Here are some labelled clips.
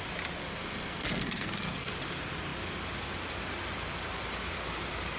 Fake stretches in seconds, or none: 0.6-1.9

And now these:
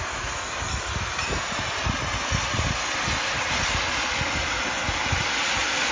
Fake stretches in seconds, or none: none

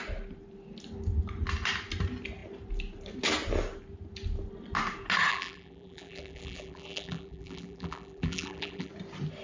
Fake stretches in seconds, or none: 5.3-8.9

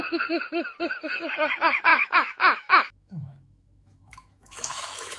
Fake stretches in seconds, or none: 1.9-5.2

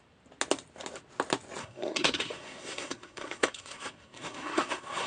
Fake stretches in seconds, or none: 1.6-5.1

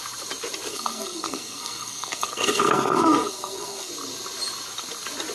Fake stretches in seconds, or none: 0.7-3.9

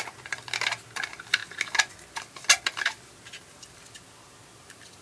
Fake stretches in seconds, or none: none

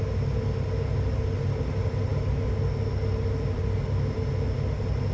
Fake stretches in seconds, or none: none